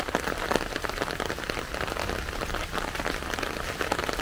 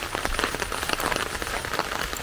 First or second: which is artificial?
second